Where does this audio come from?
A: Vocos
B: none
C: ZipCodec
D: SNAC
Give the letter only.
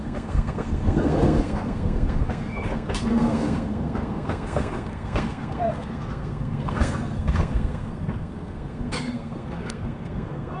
D